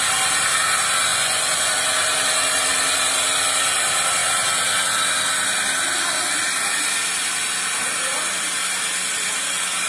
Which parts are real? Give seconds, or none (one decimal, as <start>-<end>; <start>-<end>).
0.0-1.1; 1.7-9.9